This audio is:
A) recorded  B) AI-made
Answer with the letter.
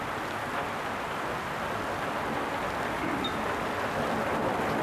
A